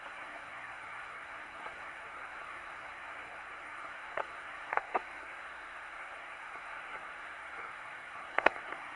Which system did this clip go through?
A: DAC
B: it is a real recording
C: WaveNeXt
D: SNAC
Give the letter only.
D